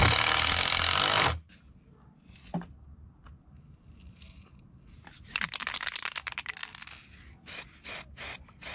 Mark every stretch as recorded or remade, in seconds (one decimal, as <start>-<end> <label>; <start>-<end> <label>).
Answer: 0.0-8.7 recorded